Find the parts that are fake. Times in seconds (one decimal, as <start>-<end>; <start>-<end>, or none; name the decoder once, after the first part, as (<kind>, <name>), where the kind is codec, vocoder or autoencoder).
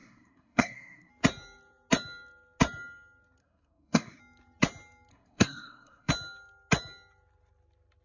0.0-1.1 (codec, SNAC); 3.4-4.2; 5.1-6.1